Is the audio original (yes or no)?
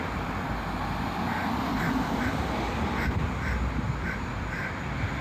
yes